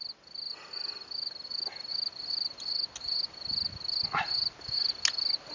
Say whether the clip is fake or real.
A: real